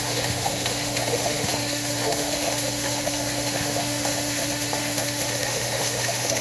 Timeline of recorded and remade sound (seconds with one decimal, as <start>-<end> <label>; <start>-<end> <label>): 0.0-6.4 remade